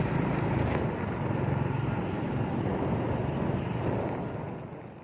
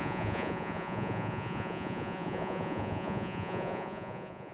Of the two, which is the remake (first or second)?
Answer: second